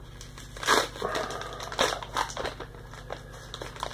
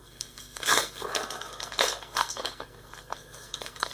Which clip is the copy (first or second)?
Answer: second